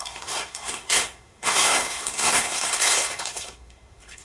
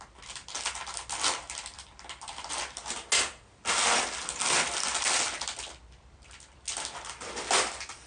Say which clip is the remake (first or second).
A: first